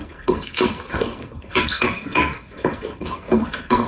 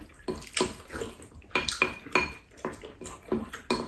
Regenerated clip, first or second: first